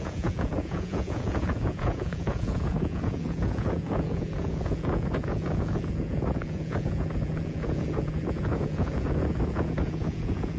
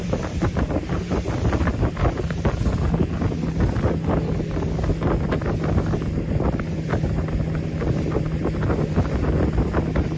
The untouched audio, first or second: second